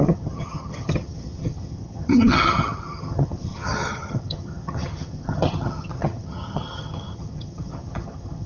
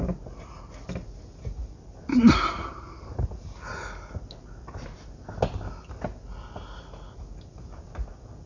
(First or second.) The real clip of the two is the second